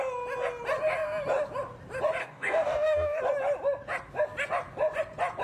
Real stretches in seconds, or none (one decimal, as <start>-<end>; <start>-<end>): 0.0-2.2; 3.2-5.4